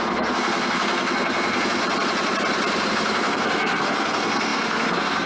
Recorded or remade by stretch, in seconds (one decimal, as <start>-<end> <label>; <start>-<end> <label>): 0.0-1.8 remade; 1.8-2.9 recorded; 2.9-5.3 remade